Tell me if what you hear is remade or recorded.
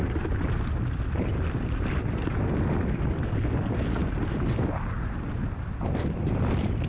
recorded